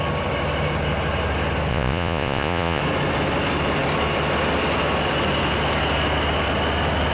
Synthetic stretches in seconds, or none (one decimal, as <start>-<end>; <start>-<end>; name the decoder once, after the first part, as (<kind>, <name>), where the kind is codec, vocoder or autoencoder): 1.7-2.8 (vocoder, Vocos)

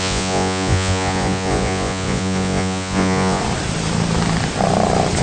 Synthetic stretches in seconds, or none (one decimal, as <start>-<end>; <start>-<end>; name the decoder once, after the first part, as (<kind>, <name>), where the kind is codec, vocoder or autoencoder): 0.0-3.4 (vocoder, Vocos)